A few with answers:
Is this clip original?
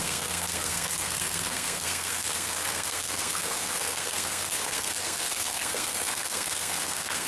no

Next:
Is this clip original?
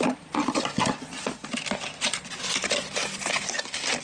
yes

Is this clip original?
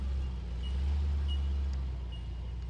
yes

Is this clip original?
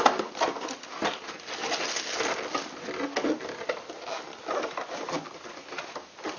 yes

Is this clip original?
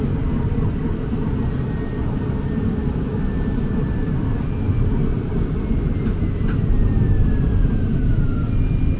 yes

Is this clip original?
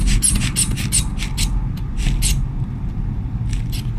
yes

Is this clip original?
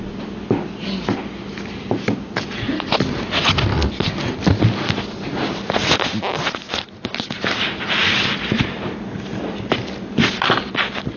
yes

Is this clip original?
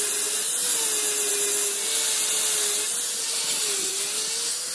yes